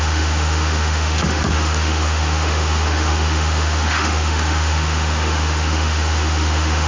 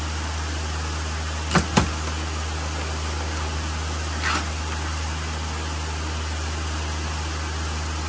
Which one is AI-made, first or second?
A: first